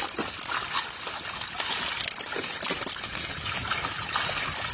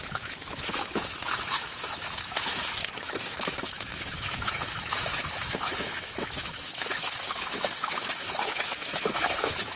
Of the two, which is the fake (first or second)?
second